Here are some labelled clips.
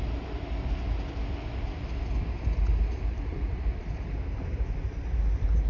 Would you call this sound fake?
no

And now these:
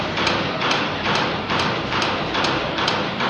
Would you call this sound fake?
yes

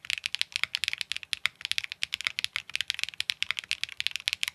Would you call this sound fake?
no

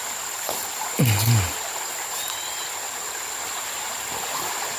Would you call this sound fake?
no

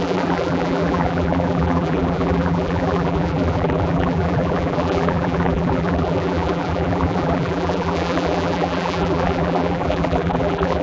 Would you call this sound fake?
yes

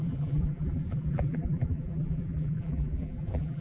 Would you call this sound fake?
yes